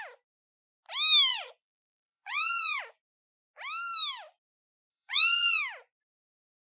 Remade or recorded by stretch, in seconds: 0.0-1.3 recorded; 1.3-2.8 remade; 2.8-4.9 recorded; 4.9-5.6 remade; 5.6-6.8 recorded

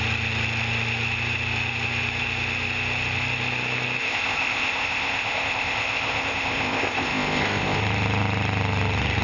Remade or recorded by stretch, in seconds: 0.0-4.0 recorded; 4.0-7.8 remade; 7.8-9.2 recorded

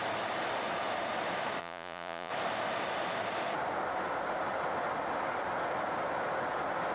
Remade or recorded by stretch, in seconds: 0.0-1.6 recorded; 1.6-2.3 remade; 2.3-6.9 recorded